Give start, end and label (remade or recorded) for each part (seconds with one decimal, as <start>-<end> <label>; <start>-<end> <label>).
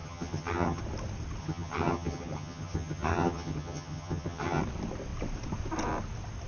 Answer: 0.0-0.8 remade; 0.8-1.4 recorded; 1.4-4.6 remade; 4.6-6.5 recorded